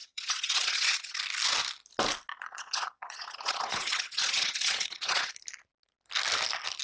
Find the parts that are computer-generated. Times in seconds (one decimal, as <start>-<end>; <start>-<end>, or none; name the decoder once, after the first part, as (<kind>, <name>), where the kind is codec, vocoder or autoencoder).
0.0-1.2 (vocoder, Vocos); 2.3-5.3

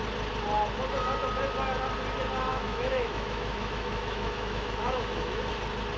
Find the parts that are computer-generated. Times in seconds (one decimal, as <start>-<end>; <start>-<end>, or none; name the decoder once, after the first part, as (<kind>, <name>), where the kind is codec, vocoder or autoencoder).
2.5-5.5 (autoencoder, DAC-VAE)

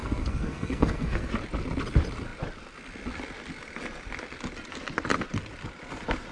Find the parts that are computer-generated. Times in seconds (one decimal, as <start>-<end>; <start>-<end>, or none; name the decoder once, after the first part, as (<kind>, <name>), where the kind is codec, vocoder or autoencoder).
0.0-1.3 (codec, SNAC)

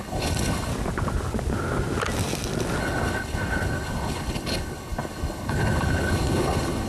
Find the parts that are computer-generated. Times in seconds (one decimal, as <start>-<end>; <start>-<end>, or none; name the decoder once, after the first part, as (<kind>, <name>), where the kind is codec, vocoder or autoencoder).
0.0-0.7 (codec, HILCodec); 2.8-6.9